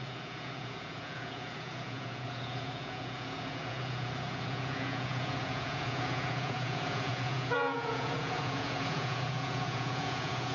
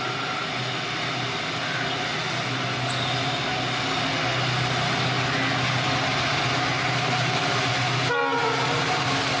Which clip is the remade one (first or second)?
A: first